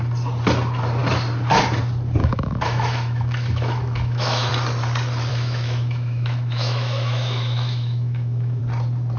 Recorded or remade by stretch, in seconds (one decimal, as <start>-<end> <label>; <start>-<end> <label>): 0.0-2.2 recorded; 2.2-4.5 remade; 4.5-5.3 recorded; 5.3-8.6 remade; 8.6-9.2 recorded